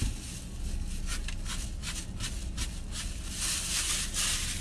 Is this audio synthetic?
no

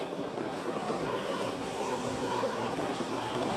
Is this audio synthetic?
yes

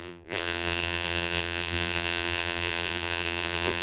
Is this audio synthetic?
yes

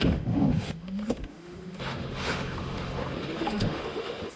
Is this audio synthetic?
yes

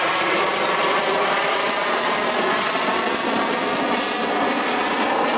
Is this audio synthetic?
no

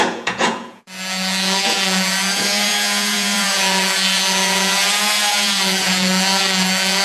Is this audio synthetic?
yes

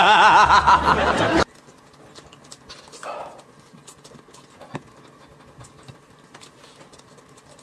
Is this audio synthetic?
no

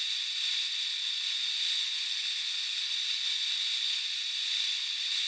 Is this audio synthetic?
no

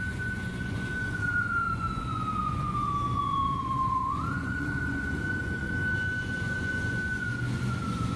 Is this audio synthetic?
yes